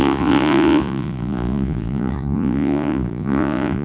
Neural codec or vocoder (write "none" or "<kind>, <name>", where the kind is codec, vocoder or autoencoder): vocoder, Vocos